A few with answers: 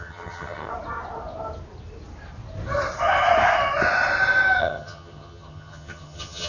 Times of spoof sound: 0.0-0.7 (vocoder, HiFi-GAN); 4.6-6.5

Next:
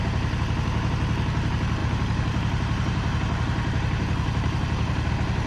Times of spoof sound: 1.8-5.1 (vocoder, BigVGAN v2)

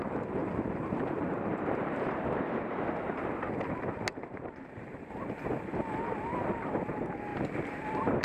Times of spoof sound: 0.4-2.9 (vocoder, BigVGAN v2); 4.1-5.1

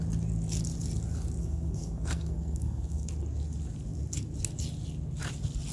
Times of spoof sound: 1.4-3.1 (codec, SNAC)

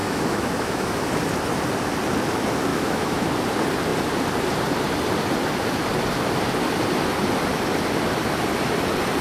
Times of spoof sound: 0.0-1.1 (autoencoder, DAC-VAE); 2.7-3.3

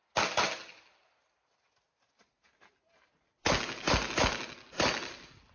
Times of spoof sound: none